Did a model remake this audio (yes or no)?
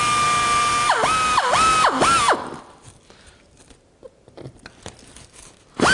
no